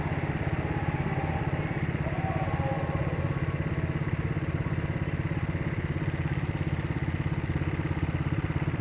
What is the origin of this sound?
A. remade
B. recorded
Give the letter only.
B